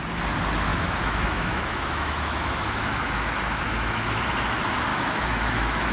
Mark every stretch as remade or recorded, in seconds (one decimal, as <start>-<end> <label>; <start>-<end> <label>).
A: 0.0-0.7 recorded; 0.7-4.2 remade; 4.2-4.9 recorded; 4.9-5.9 remade